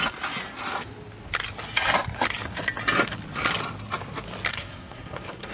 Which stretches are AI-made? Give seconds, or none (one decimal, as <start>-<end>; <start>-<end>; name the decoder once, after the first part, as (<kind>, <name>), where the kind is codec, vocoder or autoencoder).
4.5-5.5 (codec, SNAC)